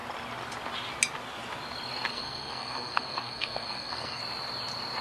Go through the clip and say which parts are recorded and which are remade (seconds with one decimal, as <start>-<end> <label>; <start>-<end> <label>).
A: 0.0-2.1 recorded; 2.1-4.2 remade; 4.2-5.0 recorded